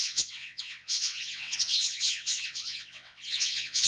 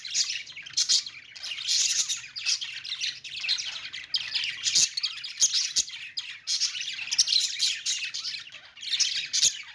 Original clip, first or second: second